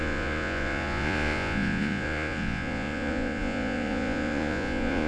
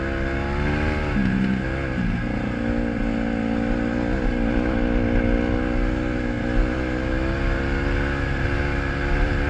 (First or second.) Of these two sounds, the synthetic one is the first